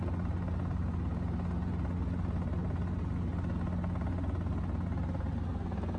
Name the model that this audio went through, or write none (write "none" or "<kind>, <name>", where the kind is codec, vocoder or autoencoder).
none